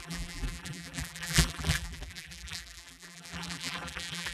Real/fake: fake